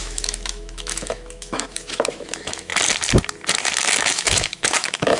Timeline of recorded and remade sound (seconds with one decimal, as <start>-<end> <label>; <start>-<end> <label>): 0.0-2.7 remade; 2.7-3.8 recorded; 3.8-5.2 remade